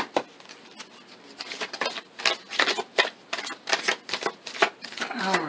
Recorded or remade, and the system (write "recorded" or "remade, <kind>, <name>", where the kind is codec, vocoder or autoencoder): recorded